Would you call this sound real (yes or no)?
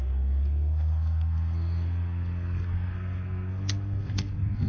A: no